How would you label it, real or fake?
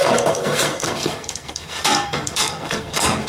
fake